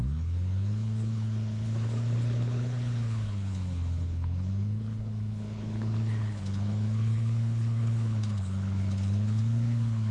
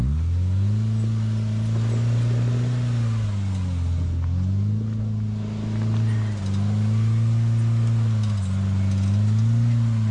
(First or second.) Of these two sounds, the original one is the second